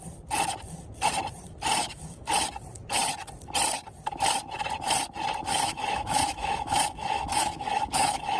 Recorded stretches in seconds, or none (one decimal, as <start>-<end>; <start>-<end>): 0.0-1.8; 2.3-5.5